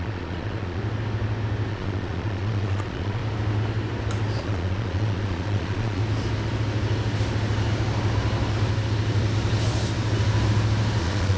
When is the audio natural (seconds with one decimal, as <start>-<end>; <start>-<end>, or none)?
0.8-1.7; 3.2-4.4; 6.0-11.0